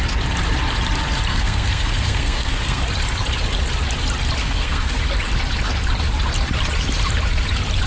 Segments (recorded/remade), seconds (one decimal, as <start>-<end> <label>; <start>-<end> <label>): 0.0-1.3 recorded; 1.3-2.8 remade; 2.8-4.4 recorded; 4.4-5.0 remade; 5.0-7.9 recorded